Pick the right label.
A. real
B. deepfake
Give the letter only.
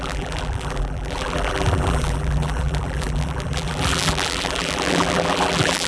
B